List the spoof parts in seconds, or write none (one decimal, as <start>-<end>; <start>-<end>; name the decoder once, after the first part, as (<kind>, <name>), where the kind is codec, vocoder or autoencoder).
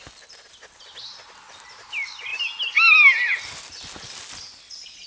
none